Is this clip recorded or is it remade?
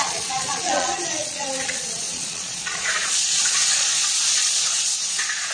remade